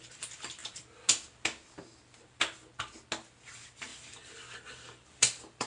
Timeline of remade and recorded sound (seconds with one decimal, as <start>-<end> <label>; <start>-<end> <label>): 0.0-3.9 recorded; 3.9-5.7 remade